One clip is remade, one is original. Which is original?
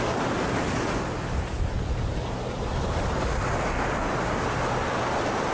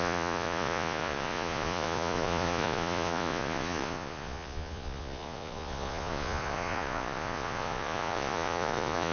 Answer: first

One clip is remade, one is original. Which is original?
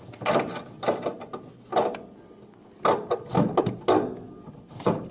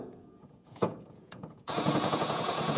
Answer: first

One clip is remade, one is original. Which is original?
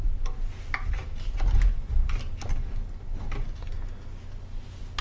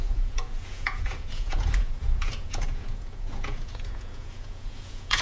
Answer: first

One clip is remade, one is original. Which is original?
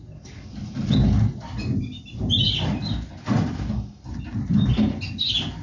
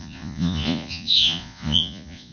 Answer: first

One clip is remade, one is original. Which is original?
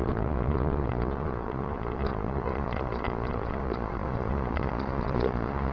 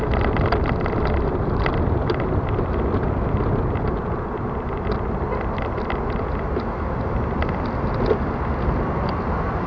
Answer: second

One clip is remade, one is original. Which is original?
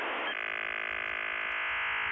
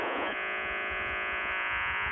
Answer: first